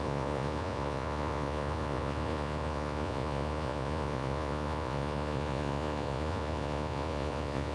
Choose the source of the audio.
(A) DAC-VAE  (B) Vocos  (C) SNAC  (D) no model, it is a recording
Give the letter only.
B